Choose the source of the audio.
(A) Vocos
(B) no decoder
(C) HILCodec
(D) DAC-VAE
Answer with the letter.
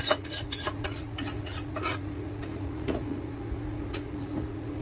A